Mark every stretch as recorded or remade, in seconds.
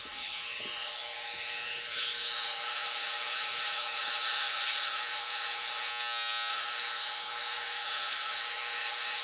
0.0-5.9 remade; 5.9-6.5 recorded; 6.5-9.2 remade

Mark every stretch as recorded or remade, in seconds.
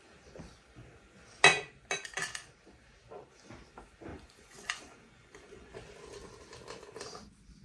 0.0-4.1 recorded; 4.1-5.7 remade; 5.7-7.6 recorded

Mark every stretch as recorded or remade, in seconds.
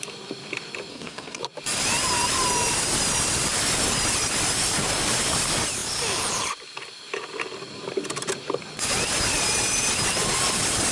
0.0-0.9 recorded; 0.9-1.4 remade; 1.4-10.9 recorded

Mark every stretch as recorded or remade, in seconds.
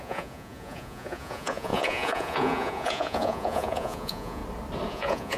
0.0-4.4 remade; 4.4-4.9 recorded; 4.9-5.4 remade